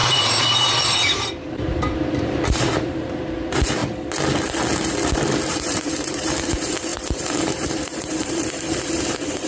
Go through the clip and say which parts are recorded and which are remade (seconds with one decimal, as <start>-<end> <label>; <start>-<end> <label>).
0.0-3.8 remade; 3.8-5.5 recorded; 5.5-9.5 remade